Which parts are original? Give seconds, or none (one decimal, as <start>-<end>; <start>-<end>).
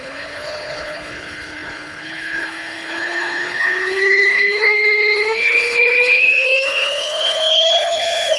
none